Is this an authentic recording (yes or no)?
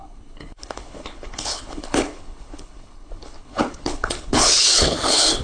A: no